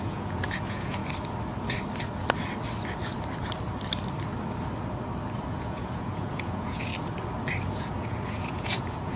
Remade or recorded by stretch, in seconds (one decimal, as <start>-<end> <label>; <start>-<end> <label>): 0.0-1.0 remade; 1.0-5.5 recorded; 5.5-6.9 remade; 6.9-7.7 recorded; 7.7-9.2 remade